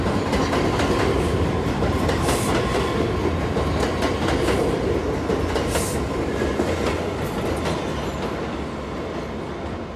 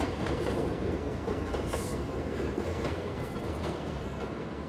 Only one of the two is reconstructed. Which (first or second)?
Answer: second